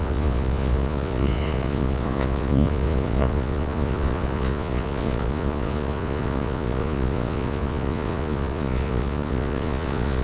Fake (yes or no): yes